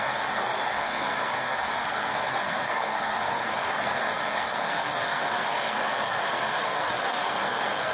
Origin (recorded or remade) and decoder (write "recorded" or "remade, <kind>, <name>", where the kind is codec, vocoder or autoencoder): remade, codec, SNAC